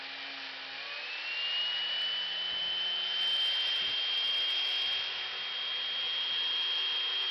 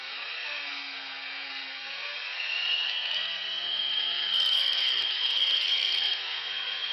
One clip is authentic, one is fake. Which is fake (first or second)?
second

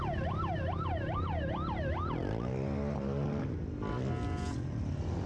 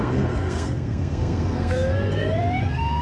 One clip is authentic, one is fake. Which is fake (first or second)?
second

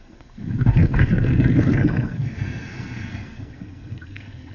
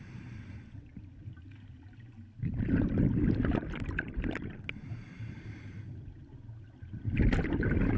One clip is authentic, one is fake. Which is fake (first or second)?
first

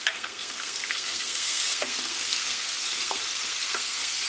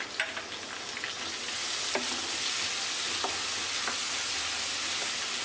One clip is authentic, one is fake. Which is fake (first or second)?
first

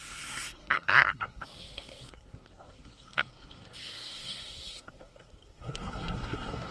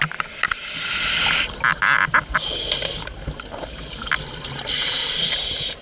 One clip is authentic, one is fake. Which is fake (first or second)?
first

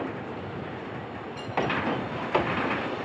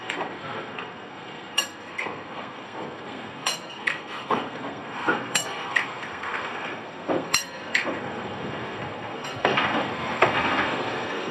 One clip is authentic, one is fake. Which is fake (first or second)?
second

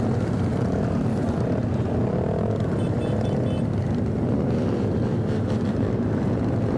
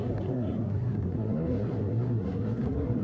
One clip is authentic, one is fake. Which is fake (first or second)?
second